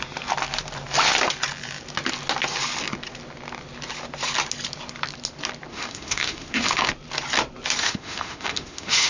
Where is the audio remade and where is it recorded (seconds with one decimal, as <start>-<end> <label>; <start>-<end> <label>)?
0.0-5.7 recorded; 5.7-6.9 remade; 6.9-7.8 recorded; 7.8-9.1 remade